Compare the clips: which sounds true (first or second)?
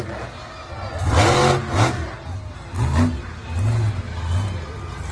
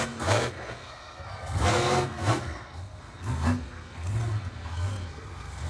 first